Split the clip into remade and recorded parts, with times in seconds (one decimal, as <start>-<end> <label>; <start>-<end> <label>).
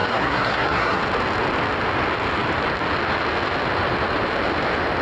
0.0-1.0 remade; 1.0-5.0 recorded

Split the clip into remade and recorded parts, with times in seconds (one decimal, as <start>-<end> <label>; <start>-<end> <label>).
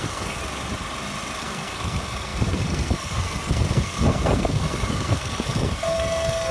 0.0-0.4 remade; 0.4-1.4 recorded; 1.4-6.5 remade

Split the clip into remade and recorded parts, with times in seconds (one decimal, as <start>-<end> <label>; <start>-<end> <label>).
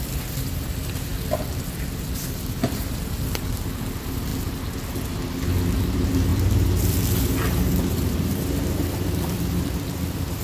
0.0-4.3 remade; 4.3-5.8 recorded; 5.8-10.4 remade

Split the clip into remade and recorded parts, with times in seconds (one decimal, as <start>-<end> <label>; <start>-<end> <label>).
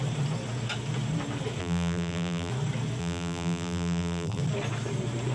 0.0-1.6 recorded; 1.6-2.5 remade; 2.5-3.0 recorded; 3.0-4.4 remade; 4.4-5.3 recorded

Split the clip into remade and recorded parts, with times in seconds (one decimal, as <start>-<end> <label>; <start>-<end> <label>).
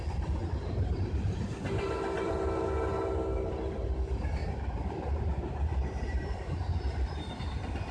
0.0-0.4 recorded; 0.4-2.3 remade; 2.3-4.4 recorded; 4.4-7.4 remade; 7.4-7.9 recorded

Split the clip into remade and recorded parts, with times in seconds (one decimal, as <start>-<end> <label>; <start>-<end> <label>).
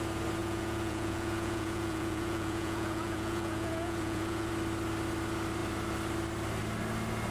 0.0-0.4 recorded; 0.4-4.5 remade; 4.5-7.3 recorded